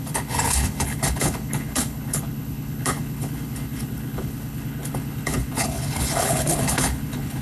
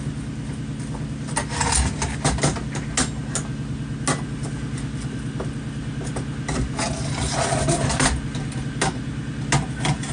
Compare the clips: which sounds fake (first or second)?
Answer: first